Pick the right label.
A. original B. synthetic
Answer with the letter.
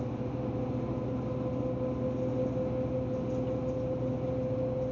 A